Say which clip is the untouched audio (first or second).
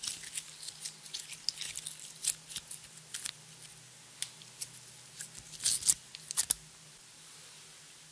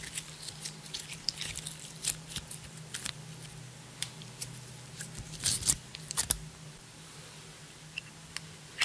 first